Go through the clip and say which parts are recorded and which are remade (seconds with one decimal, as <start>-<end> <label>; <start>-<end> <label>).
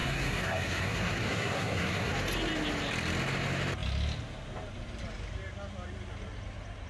0.0-2.1 remade; 2.1-6.9 recorded